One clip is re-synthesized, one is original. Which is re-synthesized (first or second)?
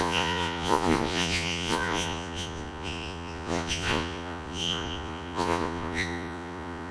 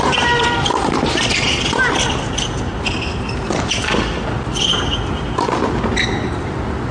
first